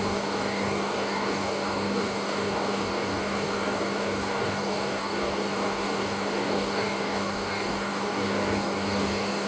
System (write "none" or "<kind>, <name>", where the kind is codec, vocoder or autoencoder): codec, DAC